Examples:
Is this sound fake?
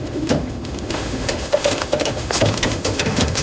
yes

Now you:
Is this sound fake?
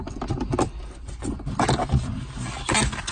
no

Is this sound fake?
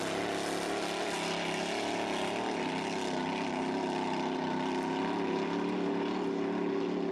no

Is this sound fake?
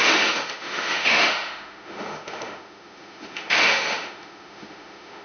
yes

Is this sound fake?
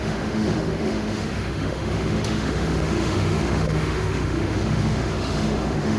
yes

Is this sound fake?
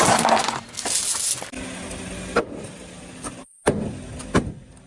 no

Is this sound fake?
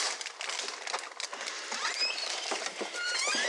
no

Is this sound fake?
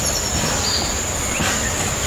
no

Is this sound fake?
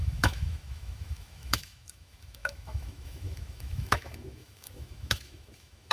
yes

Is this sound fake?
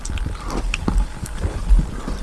no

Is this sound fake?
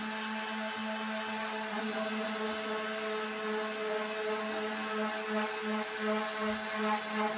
no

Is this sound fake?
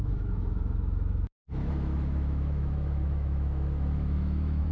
yes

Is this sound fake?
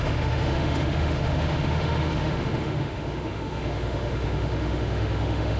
yes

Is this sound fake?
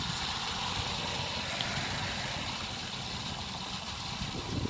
no